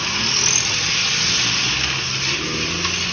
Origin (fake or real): real